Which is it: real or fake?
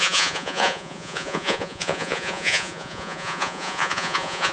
fake